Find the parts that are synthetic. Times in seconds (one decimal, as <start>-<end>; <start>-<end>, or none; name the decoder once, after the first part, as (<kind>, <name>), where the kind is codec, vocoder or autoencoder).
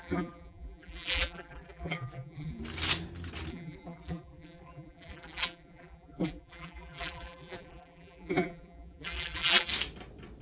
0.0-2.6 (vocoder, BigVGAN v2); 3.5-9.7